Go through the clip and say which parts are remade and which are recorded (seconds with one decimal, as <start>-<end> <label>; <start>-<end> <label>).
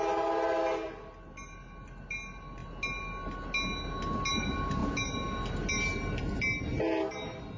0.0-7.6 recorded